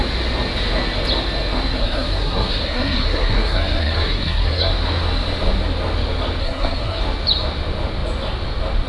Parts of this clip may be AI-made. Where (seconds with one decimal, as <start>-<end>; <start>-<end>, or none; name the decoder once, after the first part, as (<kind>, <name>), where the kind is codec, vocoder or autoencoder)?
1.8-4.7 (codec, SNAC); 6.4-7.0